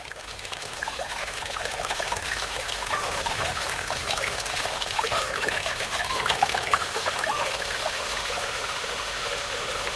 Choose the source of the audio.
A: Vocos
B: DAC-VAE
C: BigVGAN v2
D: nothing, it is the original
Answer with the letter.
B